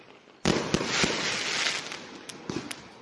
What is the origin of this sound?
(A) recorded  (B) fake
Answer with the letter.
A